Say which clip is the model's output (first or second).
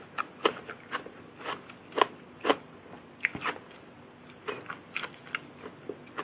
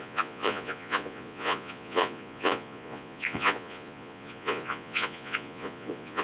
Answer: second